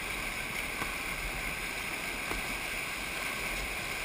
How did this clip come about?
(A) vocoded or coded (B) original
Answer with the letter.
A